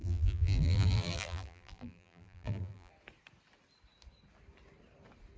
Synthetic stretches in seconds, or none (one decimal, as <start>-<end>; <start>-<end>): 0.0-2.9